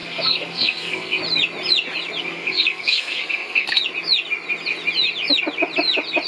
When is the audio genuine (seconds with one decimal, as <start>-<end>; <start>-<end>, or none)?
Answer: 1.2-2.2; 3.8-6.3